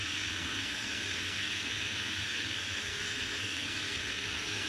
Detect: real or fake fake